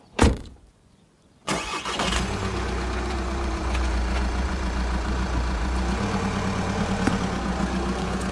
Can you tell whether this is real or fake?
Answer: fake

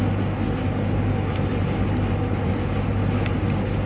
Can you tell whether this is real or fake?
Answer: real